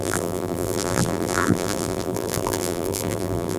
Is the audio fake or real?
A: fake